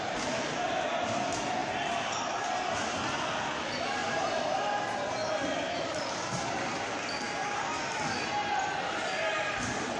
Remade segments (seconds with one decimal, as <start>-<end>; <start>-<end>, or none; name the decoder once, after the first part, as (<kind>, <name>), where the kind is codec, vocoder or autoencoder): 1.6-2.6 (vocoder, BigVGAN v2)